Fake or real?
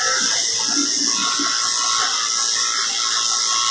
real